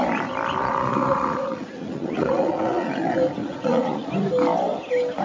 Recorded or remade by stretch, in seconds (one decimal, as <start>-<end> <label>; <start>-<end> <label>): 0.0-0.6 recorded; 0.6-2.9 remade; 2.9-3.4 recorded; 3.4-4.1 remade; 4.1-5.2 recorded